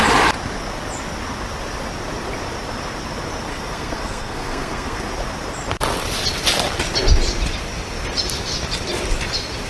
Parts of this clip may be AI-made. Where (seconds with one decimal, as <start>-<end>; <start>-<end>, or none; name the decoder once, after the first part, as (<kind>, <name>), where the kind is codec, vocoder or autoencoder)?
3.5-5.0 (codec, SNAC)